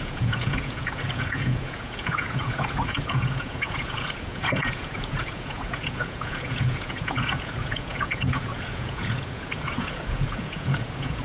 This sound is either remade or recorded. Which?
remade